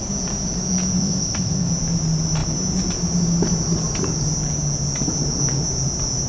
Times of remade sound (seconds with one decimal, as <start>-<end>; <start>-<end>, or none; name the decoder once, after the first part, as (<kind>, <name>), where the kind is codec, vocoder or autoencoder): 1.0-1.7 (codec, ZipCodec)